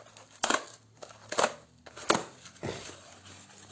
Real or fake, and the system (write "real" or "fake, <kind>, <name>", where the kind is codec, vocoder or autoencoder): real